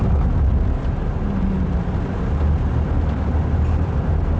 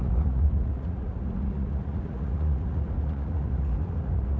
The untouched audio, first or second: first